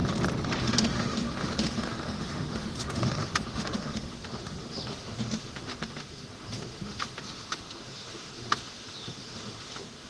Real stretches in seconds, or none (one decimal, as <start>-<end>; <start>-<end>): 0.0-0.6